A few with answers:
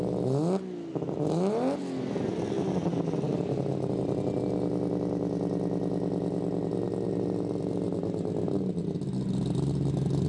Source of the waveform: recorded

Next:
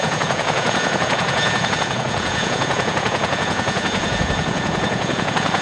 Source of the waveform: remade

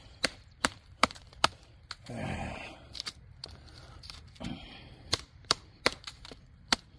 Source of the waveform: remade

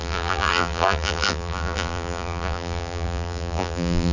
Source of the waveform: remade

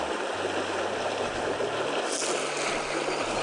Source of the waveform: recorded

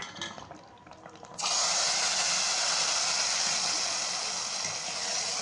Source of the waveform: recorded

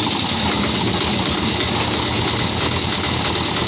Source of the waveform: recorded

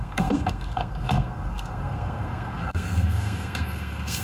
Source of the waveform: remade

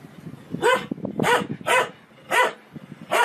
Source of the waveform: recorded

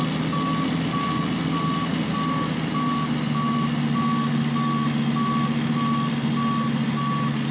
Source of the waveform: recorded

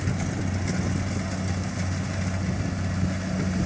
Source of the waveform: recorded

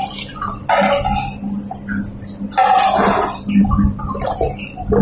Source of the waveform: recorded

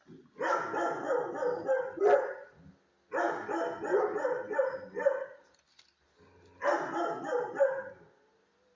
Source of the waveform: recorded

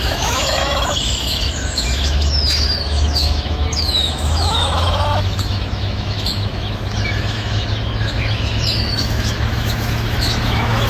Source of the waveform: remade